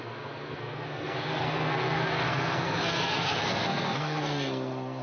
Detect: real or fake fake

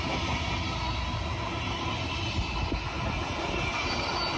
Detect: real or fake real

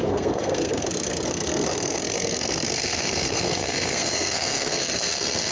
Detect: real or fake fake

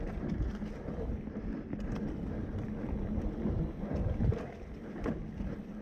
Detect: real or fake real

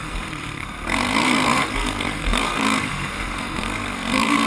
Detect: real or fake fake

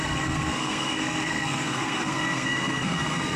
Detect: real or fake fake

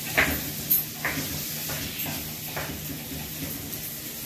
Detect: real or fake real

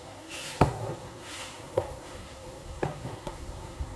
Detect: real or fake fake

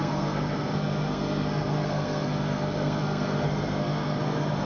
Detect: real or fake fake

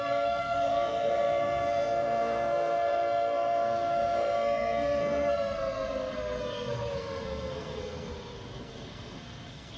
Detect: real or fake fake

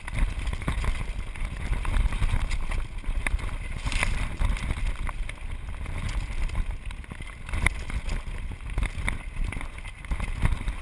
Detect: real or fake real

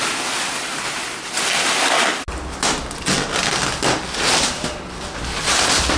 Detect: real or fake real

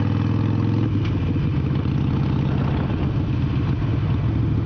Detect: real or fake real